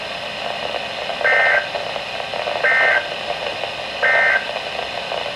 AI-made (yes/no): no